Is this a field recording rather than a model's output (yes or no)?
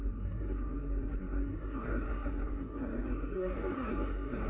no